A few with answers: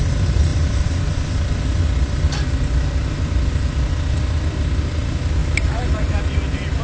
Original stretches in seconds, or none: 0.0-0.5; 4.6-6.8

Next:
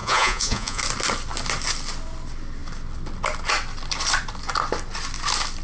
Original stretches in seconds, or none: 0.8-5.6

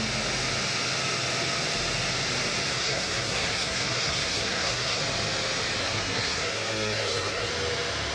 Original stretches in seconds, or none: 0.0-2.7; 5.0-5.8; 7.5-8.1